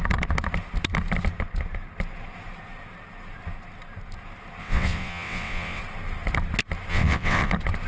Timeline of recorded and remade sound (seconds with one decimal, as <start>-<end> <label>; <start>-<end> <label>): 0.0-4.6 recorded; 4.6-5.8 remade; 5.8-6.9 recorded; 6.9-7.5 remade; 7.5-7.9 recorded